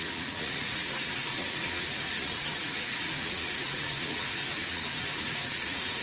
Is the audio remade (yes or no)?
yes